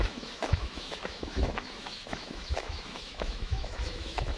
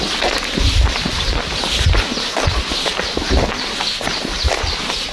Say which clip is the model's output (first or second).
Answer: first